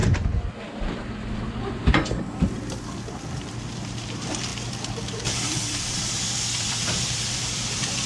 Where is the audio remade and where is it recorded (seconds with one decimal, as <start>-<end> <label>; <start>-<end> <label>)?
0.0-1.6 recorded; 1.6-8.1 remade